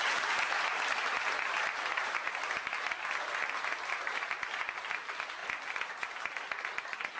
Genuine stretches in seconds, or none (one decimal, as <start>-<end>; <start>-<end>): 0.0-7.2